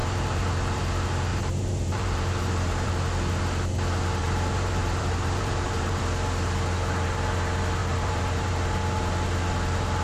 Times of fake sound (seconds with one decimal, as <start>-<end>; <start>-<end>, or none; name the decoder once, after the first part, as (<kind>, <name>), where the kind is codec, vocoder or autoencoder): 0.0-0.8 (vocoder, BigVGAN v2); 1.3-2.9; 4.2-6.0; 7.8-8.5

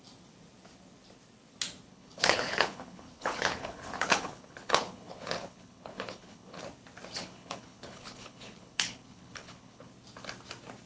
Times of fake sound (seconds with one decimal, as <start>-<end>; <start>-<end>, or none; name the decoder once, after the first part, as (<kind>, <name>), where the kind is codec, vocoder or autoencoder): 1.9-6.6 (codec, HILCodec); 7.2-9.9

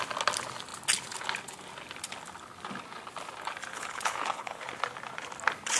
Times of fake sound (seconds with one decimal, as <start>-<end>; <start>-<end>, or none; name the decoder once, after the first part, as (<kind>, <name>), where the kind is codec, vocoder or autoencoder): 3.7-4.7 (codec, HILCodec)